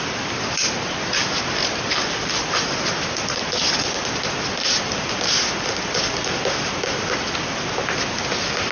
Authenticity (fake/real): fake